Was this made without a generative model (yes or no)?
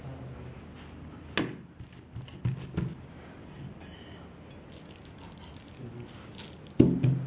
yes